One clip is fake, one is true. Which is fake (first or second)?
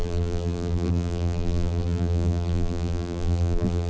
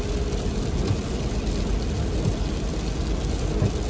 first